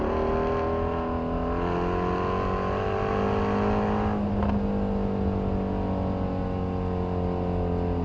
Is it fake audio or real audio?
real